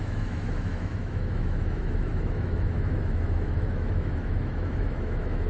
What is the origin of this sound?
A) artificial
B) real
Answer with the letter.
A